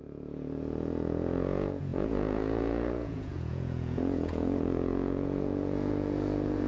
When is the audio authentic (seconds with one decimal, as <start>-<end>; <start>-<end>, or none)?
none